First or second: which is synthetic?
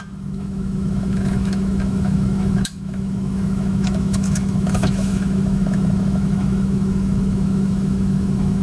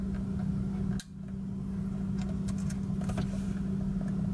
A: first